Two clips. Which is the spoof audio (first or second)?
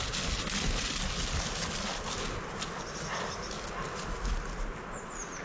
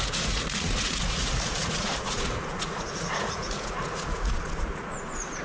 second